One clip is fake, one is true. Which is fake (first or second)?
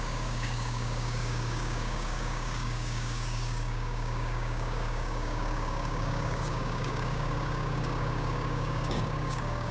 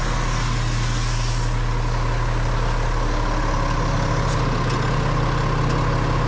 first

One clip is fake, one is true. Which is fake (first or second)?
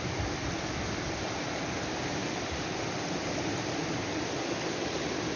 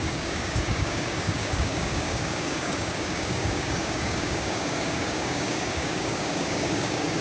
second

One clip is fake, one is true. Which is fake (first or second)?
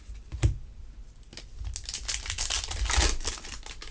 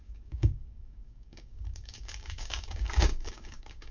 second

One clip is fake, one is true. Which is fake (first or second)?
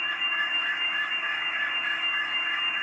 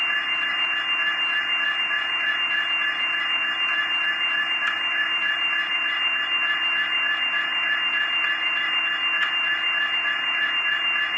first